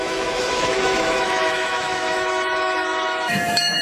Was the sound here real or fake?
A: fake